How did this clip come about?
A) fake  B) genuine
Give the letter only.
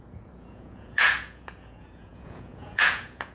A